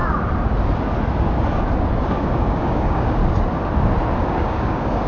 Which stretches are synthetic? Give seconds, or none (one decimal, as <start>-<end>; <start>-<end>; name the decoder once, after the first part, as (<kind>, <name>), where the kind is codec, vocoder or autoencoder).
2.0-3.2 (codec, DAC); 4.2-5.1